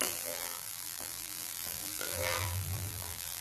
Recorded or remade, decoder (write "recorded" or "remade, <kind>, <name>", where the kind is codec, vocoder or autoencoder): remade, vocoder, BigVGAN v2